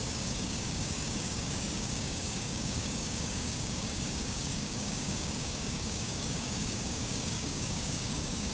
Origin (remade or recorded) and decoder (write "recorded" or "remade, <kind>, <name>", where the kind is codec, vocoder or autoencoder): remade, codec, DAC